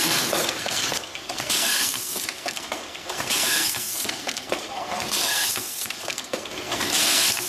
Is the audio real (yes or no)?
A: no